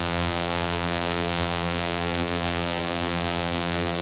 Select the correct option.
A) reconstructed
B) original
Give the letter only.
A